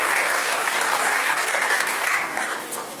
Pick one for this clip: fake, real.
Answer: fake